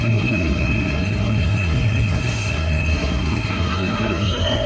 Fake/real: fake